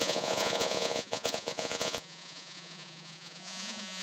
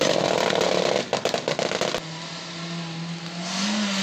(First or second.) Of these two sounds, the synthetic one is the first